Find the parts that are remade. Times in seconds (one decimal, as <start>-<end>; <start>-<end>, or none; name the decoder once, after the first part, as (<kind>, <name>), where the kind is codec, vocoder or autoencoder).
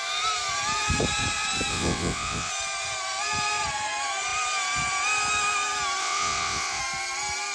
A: 1.7-2.5 (vocoder, WaveNeXt); 6.0-6.8